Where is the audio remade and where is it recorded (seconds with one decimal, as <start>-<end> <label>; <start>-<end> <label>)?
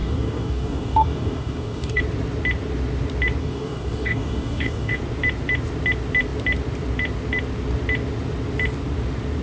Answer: 0.0-2.0 remade; 2.0-3.4 recorded; 3.4-5.0 remade; 5.0-9.4 recorded